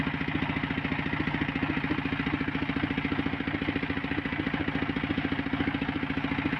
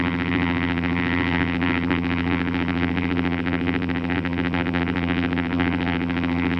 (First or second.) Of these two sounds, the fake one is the second